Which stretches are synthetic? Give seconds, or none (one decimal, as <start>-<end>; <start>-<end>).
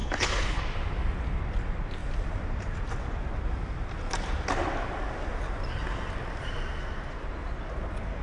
0.0-0.6